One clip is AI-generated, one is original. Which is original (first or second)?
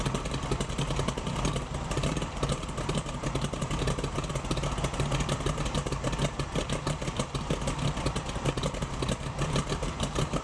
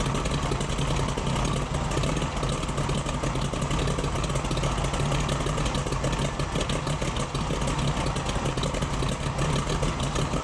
second